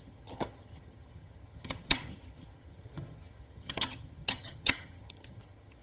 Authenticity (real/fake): fake